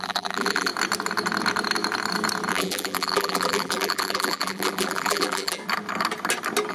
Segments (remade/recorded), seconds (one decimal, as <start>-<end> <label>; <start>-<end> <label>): 0.0-0.7 remade; 0.7-2.5 recorded; 2.5-5.6 remade; 5.6-6.7 recorded